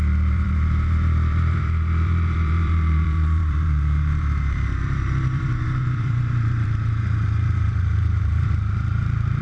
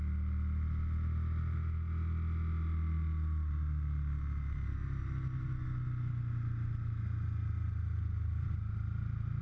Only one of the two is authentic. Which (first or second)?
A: second